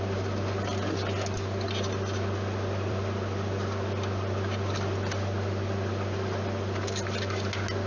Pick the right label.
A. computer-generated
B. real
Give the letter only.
B